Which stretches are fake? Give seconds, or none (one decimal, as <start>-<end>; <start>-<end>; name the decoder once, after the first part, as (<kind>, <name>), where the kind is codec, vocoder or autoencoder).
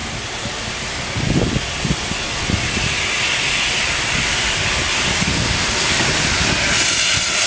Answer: none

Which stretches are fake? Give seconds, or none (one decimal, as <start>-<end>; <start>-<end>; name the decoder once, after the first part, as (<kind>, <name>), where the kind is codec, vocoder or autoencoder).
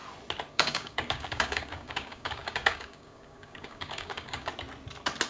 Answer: 0.5-4.5 (codec, DAC)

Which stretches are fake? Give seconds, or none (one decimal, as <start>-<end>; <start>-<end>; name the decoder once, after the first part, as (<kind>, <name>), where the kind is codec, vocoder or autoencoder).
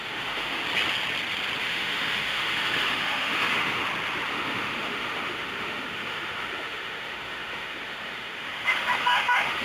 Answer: 0.0-0.6 (autoencoder, DAC-VAE); 1.6-3.8; 4.3-9.6